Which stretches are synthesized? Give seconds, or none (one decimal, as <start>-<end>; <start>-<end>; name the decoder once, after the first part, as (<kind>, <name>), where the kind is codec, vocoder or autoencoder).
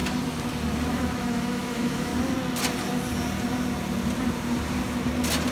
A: 0.9-2.1 (autoencoder, DAC-VAE)